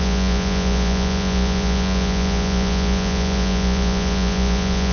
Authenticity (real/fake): fake